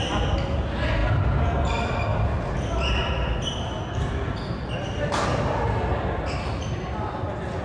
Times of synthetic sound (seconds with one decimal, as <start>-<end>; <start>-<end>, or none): none